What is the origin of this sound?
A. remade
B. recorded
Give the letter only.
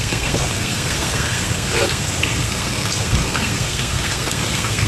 A